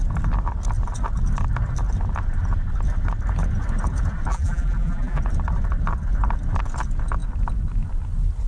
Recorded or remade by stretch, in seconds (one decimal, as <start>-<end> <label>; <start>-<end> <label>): 0.0-4.3 recorded; 4.3-5.2 remade; 5.2-8.5 recorded